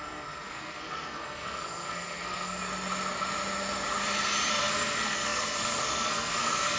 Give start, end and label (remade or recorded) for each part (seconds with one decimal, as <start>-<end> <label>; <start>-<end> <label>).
0.0-2.6 remade; 2.6-4.5 recorded; 4.5-6.8 remade